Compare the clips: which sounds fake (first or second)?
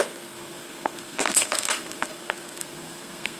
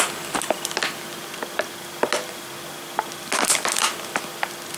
first